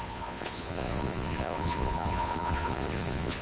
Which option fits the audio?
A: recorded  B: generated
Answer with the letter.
B